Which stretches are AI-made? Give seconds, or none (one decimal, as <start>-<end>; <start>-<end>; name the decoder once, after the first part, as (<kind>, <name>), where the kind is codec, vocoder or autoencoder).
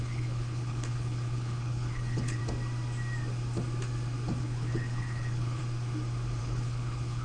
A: 0.0-2.4 (codec, HILCodec); 4.4-5.6; 6.4-7.2